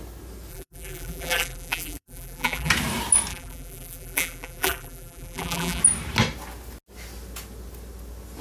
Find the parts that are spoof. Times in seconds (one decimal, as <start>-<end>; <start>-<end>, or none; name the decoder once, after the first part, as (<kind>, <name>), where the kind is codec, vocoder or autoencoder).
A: 0.5-2.7 (vocoder, BigVGAN v2); 3.3-5.8

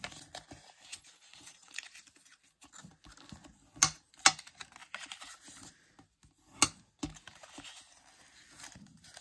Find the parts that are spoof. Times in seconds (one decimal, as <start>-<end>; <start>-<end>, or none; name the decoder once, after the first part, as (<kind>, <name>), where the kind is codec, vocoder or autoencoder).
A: 0.9-1.7 (vocoder, WaveNeXt)

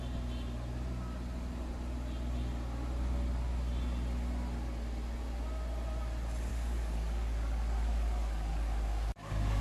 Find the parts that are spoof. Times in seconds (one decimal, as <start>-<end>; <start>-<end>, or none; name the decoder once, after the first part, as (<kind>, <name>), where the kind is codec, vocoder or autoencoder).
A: 6.5-9.6 (codec, DAC)

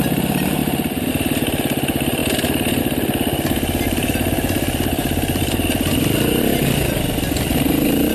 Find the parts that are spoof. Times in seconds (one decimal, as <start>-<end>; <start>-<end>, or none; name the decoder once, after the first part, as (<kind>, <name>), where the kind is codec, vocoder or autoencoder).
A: none

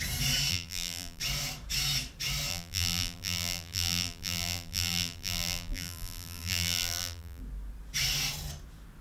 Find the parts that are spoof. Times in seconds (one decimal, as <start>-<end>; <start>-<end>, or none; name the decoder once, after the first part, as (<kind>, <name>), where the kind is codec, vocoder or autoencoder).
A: 0.5-1.2 (vocoder, BigVGAN v2); 2.5-7.4

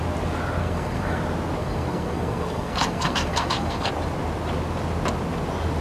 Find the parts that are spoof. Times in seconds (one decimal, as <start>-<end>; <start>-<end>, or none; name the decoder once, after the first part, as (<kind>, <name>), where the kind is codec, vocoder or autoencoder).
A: 0.6-1.2 (codec, SNAC); 1.6-3.9

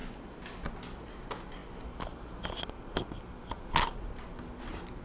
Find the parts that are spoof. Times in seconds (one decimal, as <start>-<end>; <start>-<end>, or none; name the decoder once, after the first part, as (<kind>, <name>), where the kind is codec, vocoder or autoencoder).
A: none

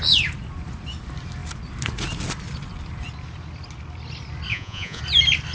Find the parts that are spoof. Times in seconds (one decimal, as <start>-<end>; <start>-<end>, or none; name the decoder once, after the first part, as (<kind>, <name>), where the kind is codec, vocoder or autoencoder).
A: 4.5-5.0 (vocoder, Vocos)